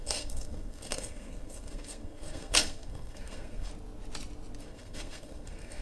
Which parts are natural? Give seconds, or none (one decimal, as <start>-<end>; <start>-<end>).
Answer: 3.7-4.6